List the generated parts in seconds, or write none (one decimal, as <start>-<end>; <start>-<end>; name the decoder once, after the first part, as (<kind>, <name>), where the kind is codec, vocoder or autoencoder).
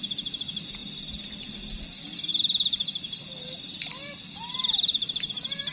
none